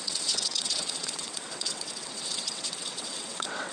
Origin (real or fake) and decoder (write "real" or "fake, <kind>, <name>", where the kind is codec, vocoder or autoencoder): fake, vocoder, WaveNeXt